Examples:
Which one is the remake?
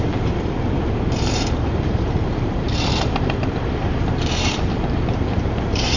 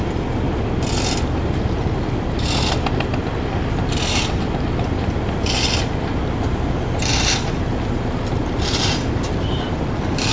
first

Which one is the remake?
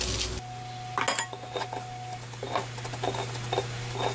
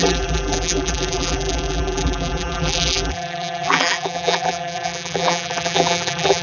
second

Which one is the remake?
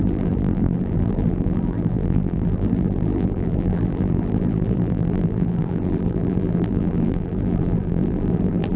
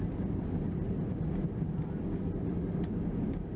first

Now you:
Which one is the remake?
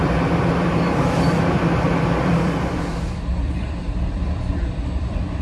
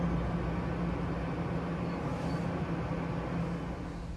first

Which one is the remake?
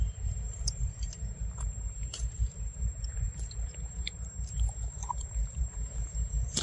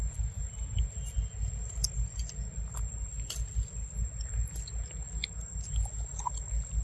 first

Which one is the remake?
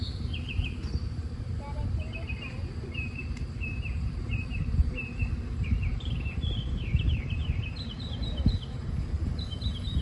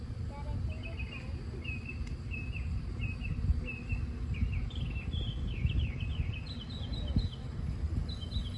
first